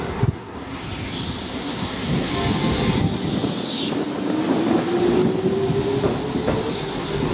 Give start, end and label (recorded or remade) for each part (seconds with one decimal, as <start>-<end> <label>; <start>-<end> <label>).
0.0-0.8 remade; 0.8-1.5 recorded; 1.5-2.3 remade; 2.3-6.7 recorded; 6.7-7.3 remade